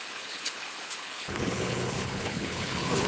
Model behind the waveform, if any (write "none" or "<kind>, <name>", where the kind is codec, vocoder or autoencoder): codec, HILCodec